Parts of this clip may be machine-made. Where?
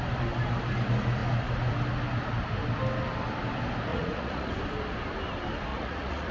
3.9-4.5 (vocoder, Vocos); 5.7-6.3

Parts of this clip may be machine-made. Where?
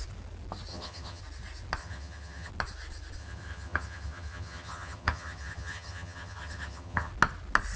0.7-1.2 (vocoder, HiFi-GAN); 1.8-2.5; 3.2-7.1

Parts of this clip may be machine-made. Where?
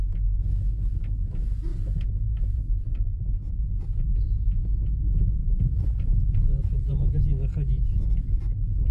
1.7-3.8 (vocoder, BigVGAN v2); 5.4-7.2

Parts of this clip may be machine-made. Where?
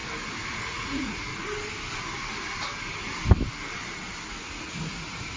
0.6-1.3 (vocoder, Vocos); 4.3-5.4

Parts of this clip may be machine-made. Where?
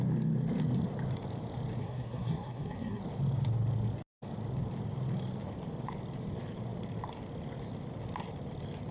1.8-3.0 (codec, SNAC)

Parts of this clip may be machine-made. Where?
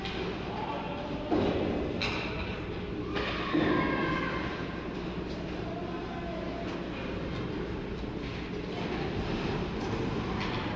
none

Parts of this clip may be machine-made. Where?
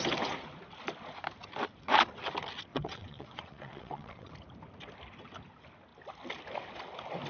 2.7-4.3 (vocoder, WaveNeXt)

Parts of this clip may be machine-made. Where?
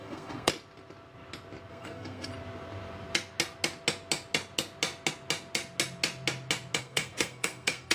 0.0-0.5 (codec, SNAC); 1.7-2.3; 6.8-7.9